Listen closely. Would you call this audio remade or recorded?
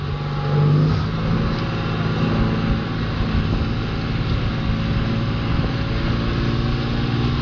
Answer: recorded